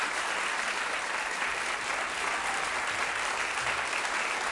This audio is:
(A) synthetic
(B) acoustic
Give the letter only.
B